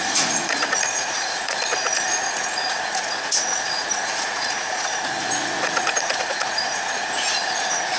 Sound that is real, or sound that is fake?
fake